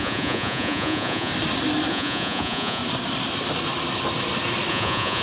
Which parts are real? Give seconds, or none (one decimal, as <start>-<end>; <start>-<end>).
1.3-1.9; 2.8-4.7